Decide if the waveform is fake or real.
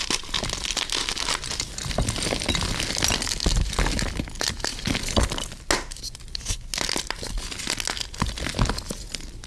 real